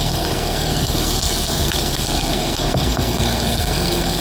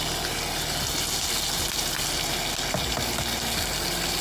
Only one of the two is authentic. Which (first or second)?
second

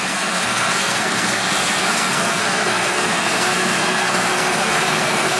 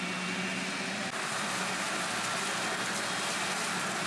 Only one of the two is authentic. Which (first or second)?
second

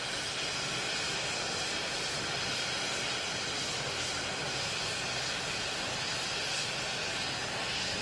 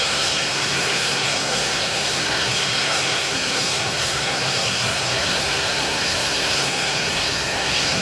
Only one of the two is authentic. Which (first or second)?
first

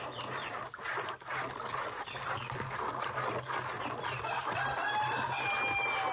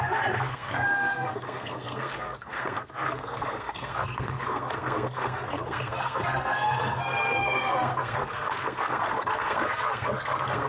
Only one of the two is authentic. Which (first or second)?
first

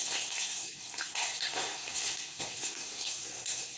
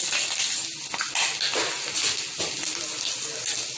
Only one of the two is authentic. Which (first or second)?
second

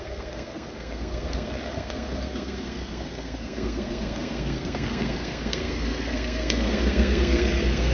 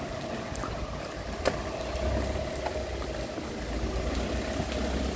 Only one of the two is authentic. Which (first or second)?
second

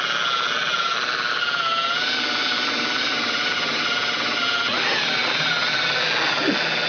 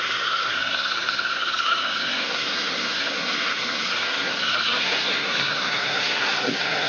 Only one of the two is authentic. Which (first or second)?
first